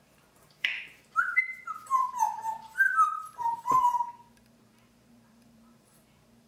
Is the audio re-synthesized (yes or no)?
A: yes